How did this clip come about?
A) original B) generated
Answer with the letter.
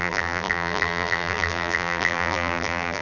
B